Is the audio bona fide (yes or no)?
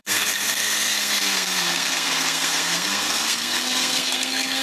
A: no